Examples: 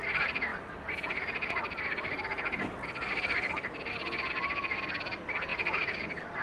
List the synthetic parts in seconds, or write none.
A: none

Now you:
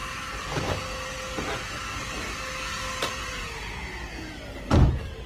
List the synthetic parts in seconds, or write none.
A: 3.1-4.3 (vocoder, Vocos)

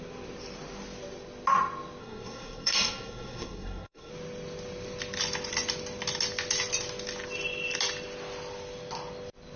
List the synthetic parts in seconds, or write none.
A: 2.0-4.1 (codec, SNAC)

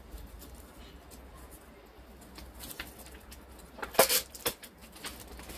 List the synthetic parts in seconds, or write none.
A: none

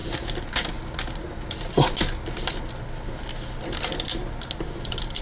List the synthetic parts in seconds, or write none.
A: none

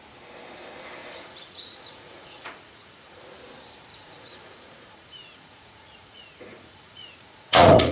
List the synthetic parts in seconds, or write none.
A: 1.0-3.2 (vocoder, Vocos); 3.9-7.9

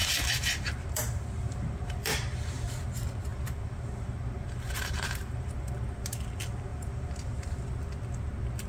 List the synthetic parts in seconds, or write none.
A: 0.0-2.9 (vocoder, BigVGAN v2); 3.3-5.7; 6.7-7.2